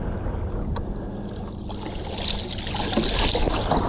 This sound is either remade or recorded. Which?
recorded